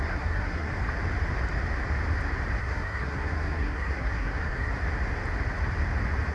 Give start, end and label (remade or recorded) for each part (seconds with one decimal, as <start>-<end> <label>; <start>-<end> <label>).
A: 0.0-0.7 remade; 0.7-2.6 recorded; 2.6-4.7 remade; 4.7-6.3 recorded